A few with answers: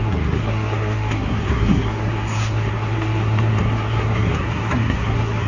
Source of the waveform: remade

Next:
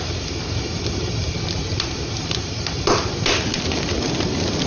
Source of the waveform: recorded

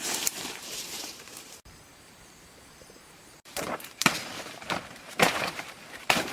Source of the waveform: remade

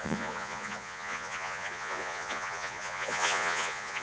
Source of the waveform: remade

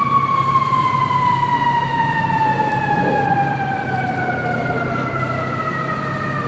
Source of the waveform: recorded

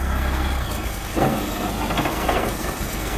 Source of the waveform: remade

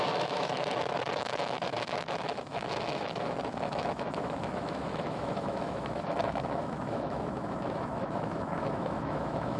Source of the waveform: remade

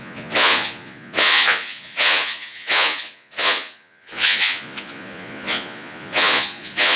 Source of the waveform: remade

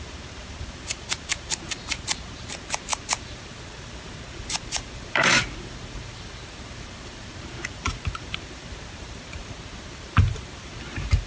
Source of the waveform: remade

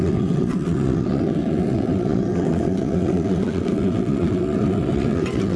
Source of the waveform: remade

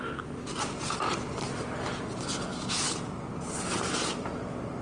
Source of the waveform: recorded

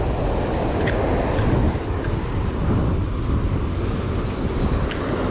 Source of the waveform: recorded